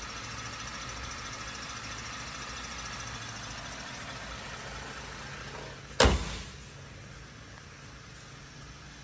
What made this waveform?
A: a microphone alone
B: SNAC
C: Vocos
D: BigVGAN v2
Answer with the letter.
A